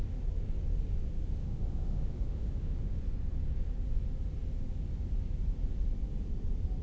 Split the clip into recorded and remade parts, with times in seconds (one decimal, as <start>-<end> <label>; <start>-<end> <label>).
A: 0.0-1.4 recorded; 1.4-3.0 remade; 3.0-6.8 recorded